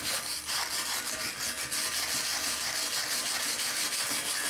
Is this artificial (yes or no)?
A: no